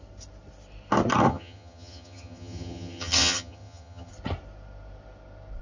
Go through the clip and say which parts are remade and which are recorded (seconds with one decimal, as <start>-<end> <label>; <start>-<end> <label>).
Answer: 0.0-1.3 recorded; 1.3-4.1 remade; 4.1-5.6 recorded